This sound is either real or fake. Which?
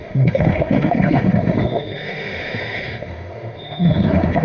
fake